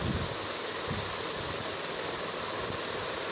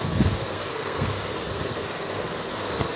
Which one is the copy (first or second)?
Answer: second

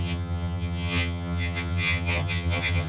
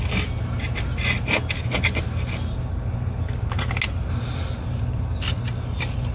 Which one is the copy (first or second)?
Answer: first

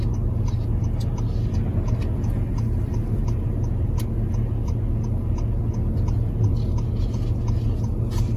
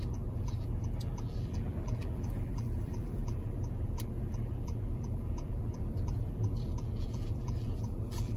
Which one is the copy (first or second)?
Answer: second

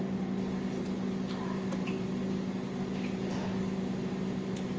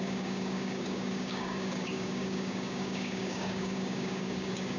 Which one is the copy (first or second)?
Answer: second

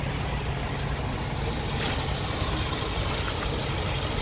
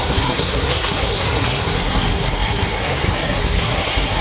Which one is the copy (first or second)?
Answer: second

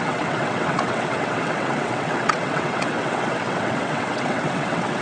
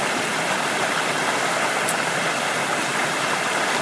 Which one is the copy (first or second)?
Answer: first